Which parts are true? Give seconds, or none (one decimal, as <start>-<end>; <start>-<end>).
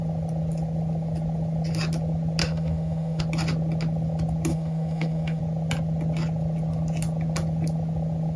0.0-2.4; 3.2-4.5; 5.4-8.4